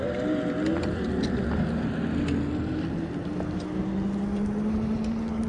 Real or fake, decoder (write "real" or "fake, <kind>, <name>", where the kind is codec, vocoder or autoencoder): real